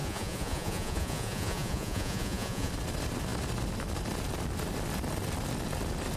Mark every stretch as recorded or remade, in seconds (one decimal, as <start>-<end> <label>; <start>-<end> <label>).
0.0-2.7 remade; 2.7-6.2 recorded